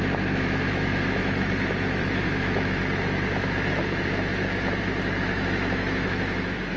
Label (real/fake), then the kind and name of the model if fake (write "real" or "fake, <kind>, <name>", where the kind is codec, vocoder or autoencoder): fake, autoencoder, DAC-VAE